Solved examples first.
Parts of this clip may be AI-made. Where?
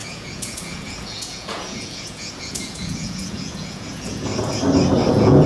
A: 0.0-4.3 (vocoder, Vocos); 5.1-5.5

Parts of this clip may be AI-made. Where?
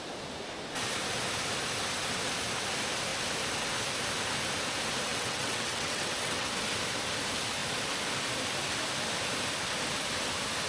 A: 5.1-6.5 (vocoder, WaveNeXt)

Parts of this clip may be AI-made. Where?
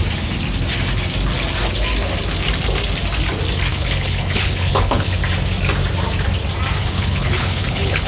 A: 3.7-5.2 (codec, HILCodec); 6.8-8.1